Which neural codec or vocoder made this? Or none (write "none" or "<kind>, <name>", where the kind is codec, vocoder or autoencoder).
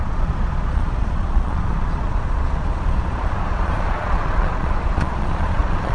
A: vocoder, Vocos